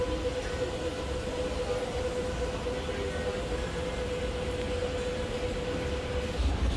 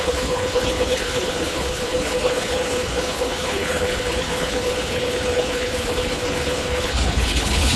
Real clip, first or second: first